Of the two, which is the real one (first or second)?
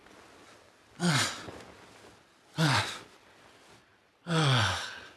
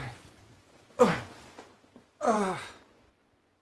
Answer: first